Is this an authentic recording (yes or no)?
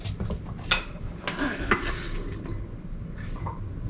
yes